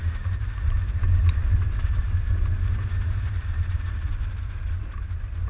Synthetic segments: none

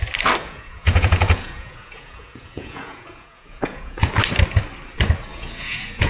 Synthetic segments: 0.4-4.1; 5.3-6.1

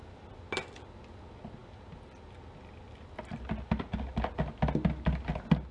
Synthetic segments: none

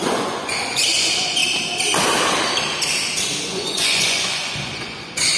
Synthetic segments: 0.0-1.4; 3.4-5.4

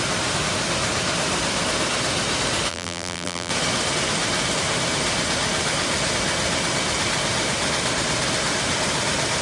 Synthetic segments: 2.7-3.5

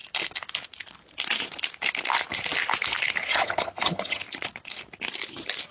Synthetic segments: 3.2-4.2

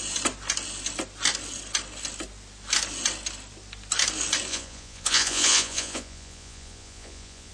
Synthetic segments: 4.5-7.5

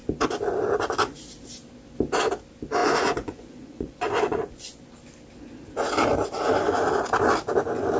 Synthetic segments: 2.8-4.8